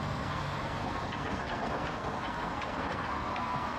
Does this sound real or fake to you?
fake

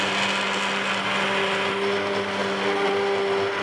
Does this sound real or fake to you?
real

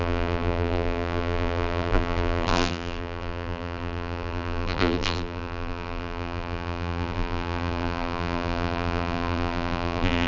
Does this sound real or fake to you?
fake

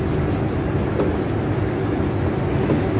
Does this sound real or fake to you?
real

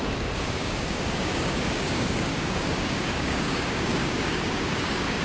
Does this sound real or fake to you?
fake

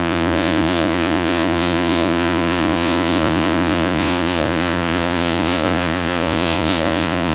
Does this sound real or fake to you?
fake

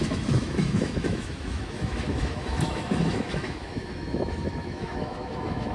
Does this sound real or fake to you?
fake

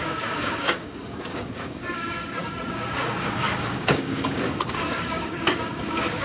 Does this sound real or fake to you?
fake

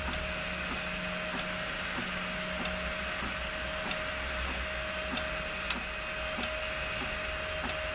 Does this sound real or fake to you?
real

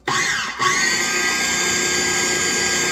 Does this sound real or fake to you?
real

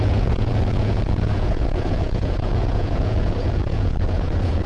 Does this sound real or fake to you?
fake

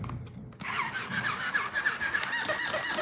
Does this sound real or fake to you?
real